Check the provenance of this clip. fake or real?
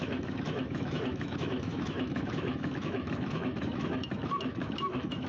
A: fake